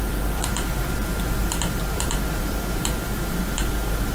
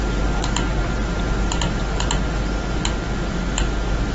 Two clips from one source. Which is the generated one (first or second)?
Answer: first